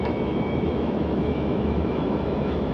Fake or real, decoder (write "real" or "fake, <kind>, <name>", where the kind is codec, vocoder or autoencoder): fake, autoencoder, DAC-VAE